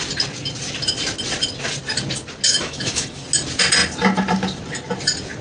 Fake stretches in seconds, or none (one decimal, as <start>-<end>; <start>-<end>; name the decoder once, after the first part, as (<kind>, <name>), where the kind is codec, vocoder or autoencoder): 2.5-3.2 (autoencoder, DAC-VAE)